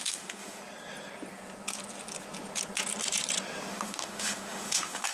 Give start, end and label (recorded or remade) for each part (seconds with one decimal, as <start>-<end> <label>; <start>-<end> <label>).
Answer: 0.0-0.6 remade; 0.6-3.7 recorded; 3.7-5.1 remade